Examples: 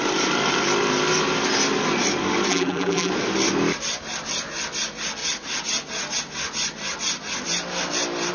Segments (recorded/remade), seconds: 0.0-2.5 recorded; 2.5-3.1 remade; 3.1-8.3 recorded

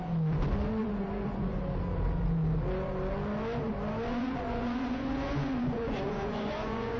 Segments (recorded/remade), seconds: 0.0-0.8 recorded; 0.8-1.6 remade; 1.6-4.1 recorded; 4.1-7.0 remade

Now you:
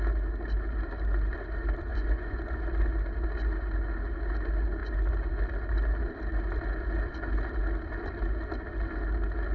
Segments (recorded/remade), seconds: 0.0-1.9 recorded; 1.9-2.6 remade; 2.6-9.5 recorded

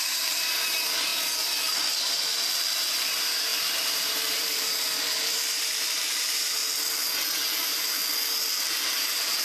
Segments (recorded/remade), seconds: 0.0-6.6 remade; 6.6-7.5 recorded; 7.5-8.0 remade; 8.0-8.7 recorded; 8.7-9.4 remade

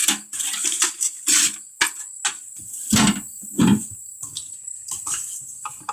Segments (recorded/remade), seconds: 0.0-2.5 recorded; 2.5-5.9 remade